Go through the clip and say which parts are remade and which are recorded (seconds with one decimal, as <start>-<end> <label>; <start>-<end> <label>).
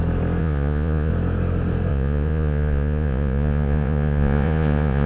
0.0-0.4 recorded; 0.4-1.1 remade; 1.1-1.9 recorded; 1.9-5.1 remade